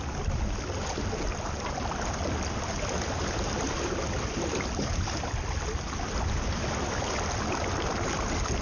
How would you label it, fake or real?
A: real